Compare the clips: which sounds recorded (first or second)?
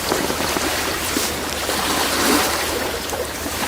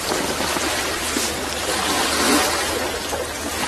second